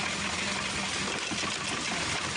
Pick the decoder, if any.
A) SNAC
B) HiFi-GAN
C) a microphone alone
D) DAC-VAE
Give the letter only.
C